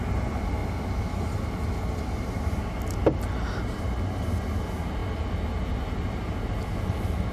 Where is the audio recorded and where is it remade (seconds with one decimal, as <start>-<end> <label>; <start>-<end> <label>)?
0.0-7.3 recorded